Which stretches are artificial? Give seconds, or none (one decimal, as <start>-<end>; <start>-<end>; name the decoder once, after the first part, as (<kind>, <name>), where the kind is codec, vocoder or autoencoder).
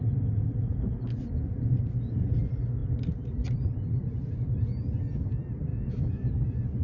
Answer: 5.7-6.3 (autoencoder, DAC-VAE)